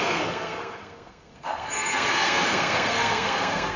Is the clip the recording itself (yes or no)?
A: no